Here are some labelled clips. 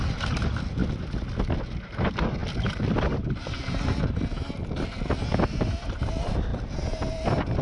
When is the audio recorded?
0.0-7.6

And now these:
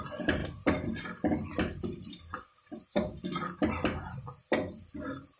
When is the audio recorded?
0.0-0.4; 3.6-5.4

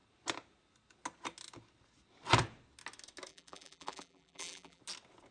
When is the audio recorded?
0.0-3.3; 4.8-5.3

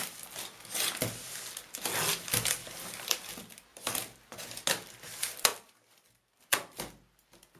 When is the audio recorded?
0.0-2.6; 3.2-3.7; 4.6-7.6

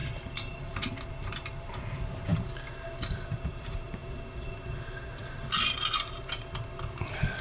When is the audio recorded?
2.3-3.5; 4.0-6.9

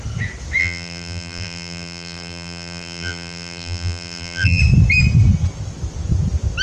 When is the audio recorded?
0.0-0.6; 4.6-6.6

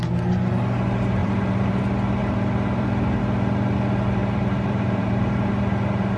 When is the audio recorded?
0.0-1.2; 1.8-2.2; 3.2-4.2; 5.5-6.2

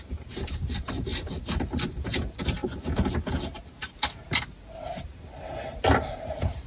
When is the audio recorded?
2.6-6.1